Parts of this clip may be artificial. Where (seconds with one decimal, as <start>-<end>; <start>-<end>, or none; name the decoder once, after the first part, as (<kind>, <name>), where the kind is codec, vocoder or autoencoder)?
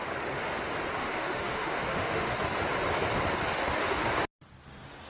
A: 1.0-2.4 (autoencoder, DAC-VAE); 3.5-4.1